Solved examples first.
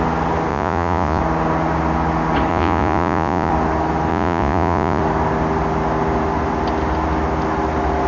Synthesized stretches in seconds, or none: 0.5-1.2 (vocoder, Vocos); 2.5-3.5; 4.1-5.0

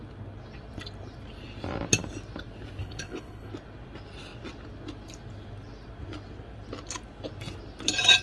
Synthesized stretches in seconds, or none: 2.8-3.5 (codec, HILCodec)

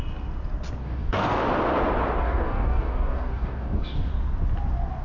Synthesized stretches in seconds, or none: 0.8-1.4 (codec, DAC); 2.2-4.1

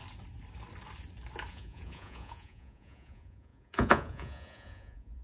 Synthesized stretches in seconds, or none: 1.5-5.2 (vocoder, Vocos)

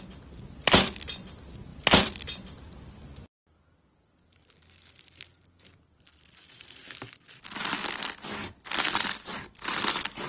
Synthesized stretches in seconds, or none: 1.7-6.8 (vocoder, BigVGAN v2); 8.4-10.3

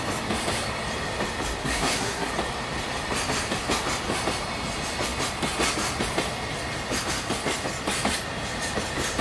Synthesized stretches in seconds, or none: 1.6-2.3 (codec, SNAC)

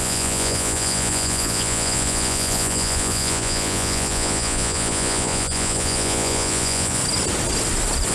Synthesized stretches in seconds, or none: 0.0-7.0 (vocoder, Vocos)